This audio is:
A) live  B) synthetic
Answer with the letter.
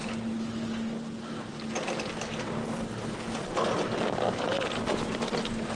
A